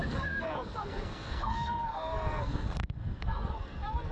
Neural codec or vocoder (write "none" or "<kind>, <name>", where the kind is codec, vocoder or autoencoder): codec, SNAC